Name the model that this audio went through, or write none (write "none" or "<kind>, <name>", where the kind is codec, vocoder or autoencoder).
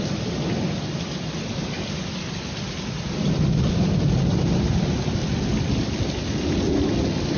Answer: none